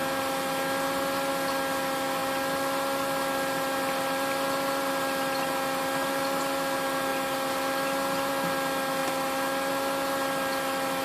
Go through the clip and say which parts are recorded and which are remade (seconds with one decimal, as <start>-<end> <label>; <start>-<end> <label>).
0.0-1.3 remade; 1.3-2.2 recorded; 2.2-6.4 remade; 6.4-11.0 recorded